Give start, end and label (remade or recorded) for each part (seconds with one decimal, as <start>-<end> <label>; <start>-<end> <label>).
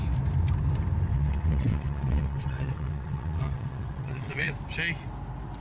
0.0-1.1 recorded; 1.1-4.5 remade; 4.5-5.6 recorded